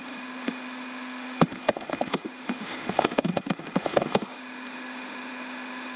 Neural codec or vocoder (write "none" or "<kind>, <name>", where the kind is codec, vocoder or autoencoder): autoencoder, DAC-VAE